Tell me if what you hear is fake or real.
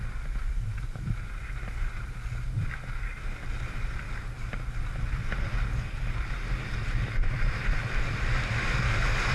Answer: real